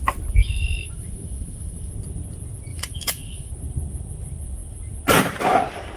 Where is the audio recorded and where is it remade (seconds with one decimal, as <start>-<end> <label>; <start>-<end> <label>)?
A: 0.0-0.4 recorded; 0.4-1.9 remade; 1.9-2.7 recorded; 2.7-3.5 remade; 3.5-6.0 recorded